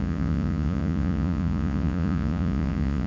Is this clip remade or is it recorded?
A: remade